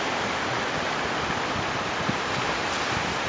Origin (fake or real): real